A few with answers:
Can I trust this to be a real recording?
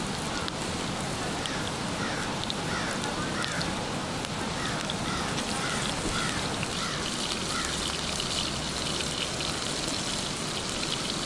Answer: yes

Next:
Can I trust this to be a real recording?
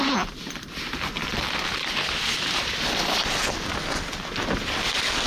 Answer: yes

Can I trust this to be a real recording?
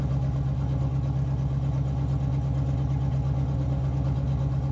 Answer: yes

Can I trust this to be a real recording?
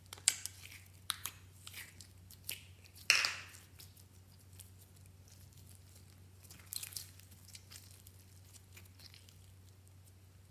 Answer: yes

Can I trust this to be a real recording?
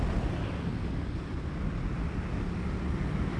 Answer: yes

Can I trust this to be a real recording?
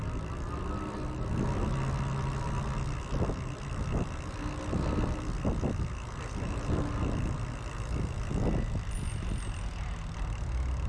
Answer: yes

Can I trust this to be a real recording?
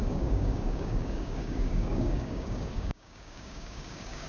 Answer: no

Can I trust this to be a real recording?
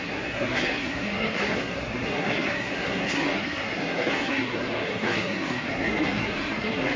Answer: no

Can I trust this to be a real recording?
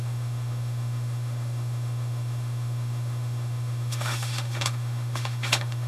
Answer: no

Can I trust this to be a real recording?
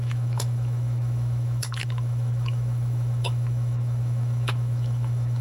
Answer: no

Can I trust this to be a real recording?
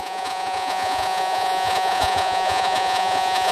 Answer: no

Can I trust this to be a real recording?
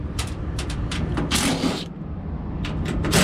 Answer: no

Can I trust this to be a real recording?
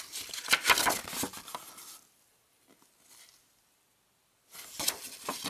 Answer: yes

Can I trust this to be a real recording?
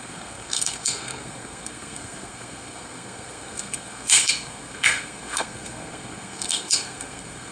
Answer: no